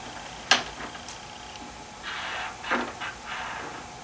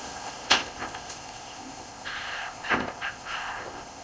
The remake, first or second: second